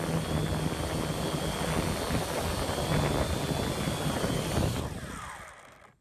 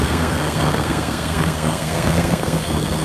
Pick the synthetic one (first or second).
second